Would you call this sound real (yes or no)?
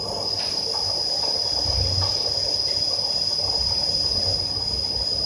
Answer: yes